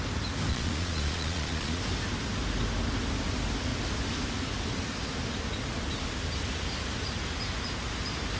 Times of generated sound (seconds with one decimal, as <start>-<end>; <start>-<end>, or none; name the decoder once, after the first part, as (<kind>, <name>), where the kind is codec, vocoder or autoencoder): 0.5-1.8 (vocoder, Vocos)